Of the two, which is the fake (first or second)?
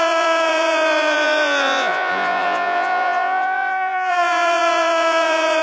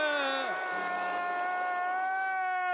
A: first